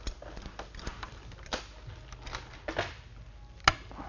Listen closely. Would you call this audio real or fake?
real